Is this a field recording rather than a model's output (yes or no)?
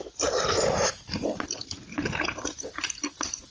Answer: yes